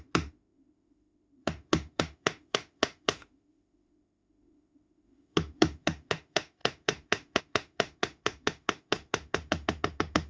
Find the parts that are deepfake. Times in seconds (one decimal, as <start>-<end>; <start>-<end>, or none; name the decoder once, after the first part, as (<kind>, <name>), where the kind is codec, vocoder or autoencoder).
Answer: 0.0-10.3 (autoencoder, DAC-VAE)